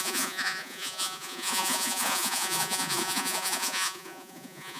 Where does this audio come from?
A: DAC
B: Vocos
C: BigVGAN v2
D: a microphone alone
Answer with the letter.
B